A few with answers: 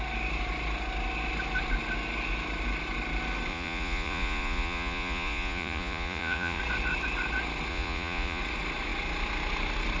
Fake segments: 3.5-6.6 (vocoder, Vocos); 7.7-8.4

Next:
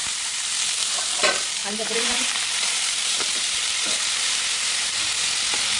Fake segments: 0.0-1.1 (vocoder, BigVGAN v2); 1.6-5.1

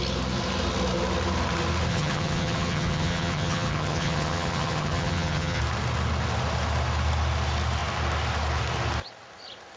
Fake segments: 1.9-5.6 (vocoder, HiFi-GAN)

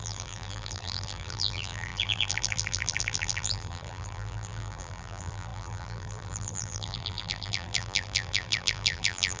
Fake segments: 0.0-9.4 (vocoder, BigVGAN v2)

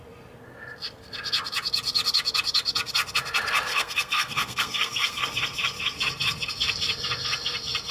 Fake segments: 3.7-5.2 (codec, SNAC)

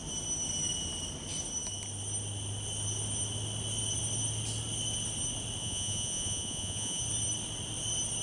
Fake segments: 5.6-7.0 (vocoder, Vocos)

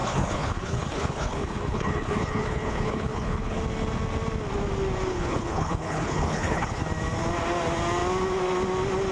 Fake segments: 0.0-3.6 (codec, HILCodec); 5.1-6.8

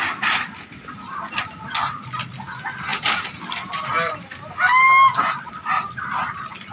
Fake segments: none